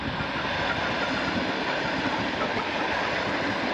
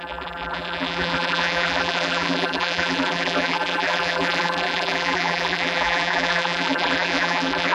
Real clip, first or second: first